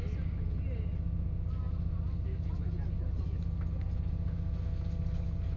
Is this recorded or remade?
recorded